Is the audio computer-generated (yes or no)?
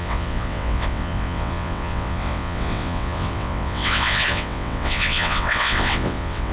yes